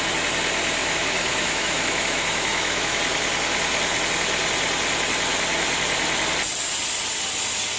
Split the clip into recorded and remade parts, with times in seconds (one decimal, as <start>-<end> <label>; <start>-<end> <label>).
0.0-0.8 recorded; 0.8-3.0 remade; 3.0-7.8 recorded